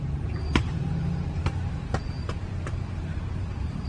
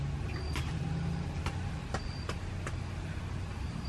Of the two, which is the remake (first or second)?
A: first